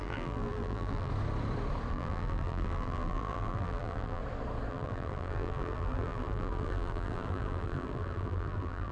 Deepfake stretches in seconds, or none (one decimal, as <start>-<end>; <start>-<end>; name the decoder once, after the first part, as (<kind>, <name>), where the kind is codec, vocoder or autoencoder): 0.0-1.1 (vocoder, BigVGAN v2); 1.9-4.2; 4.7-8.9